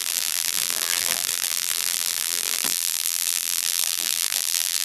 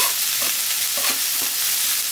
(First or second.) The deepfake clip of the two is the first